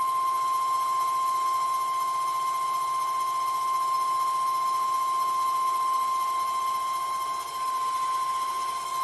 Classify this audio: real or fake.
real